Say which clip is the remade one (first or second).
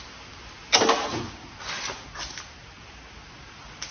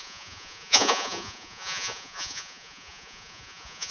second